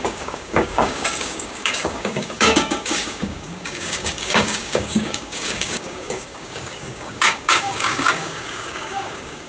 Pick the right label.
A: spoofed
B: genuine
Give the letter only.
A